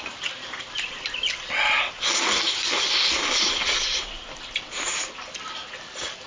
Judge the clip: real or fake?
real